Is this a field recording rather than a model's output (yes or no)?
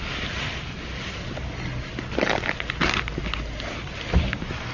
yes